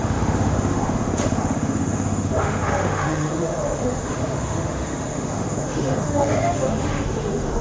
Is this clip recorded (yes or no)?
no